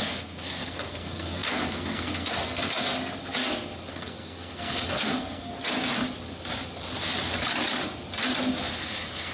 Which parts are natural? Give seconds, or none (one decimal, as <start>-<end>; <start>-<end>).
2.9-3.9; 5.5-8.8